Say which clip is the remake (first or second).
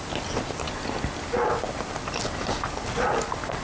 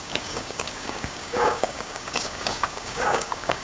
second